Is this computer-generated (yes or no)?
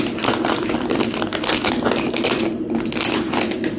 no